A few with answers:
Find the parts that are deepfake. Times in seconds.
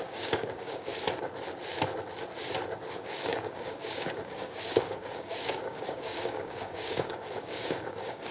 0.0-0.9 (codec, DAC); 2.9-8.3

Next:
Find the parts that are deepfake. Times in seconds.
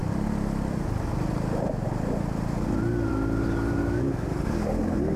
3.8-4.8 (codec, DAC)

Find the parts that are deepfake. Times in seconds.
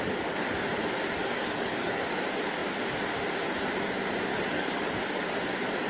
1.2-2.0 (codec, DAC); 4.3-4.9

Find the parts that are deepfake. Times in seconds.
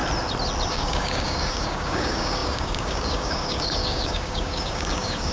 0.7-5.3 (codec, DAC)